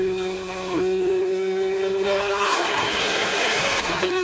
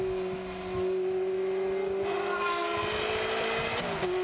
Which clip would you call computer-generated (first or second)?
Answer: first